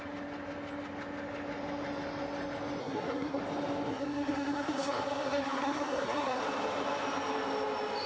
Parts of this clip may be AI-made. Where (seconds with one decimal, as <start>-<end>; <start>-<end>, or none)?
2.8-3.4; 3.9-6.4